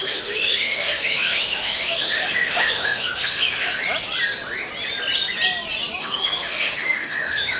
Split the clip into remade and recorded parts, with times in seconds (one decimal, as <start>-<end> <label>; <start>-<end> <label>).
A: 0.0-3.8 remade; 3.8-6.0 recorded; 6.0-7.6 remade